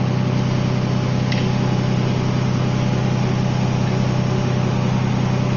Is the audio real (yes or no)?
yes